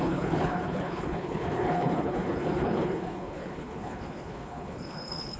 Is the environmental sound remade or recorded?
remade